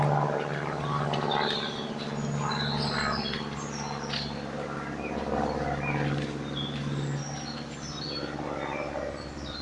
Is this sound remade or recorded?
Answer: recorded